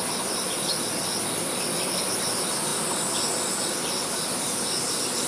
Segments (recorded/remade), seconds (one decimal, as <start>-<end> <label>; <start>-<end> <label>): 0.0-5.3 recorded